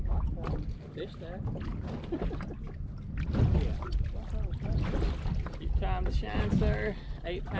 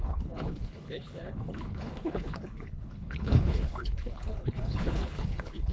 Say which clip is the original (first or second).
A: first